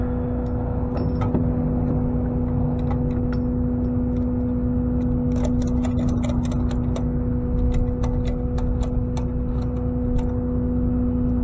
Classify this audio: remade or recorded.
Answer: recorded